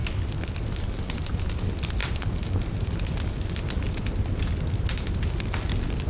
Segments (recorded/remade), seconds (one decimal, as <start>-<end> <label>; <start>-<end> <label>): 0.0-6.1 recorded